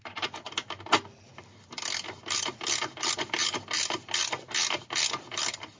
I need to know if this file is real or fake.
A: real